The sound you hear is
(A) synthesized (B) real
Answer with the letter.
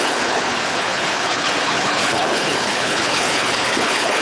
A